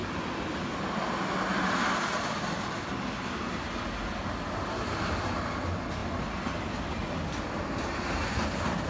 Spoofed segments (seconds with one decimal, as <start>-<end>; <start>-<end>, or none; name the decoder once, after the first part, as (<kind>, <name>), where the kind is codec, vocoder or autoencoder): none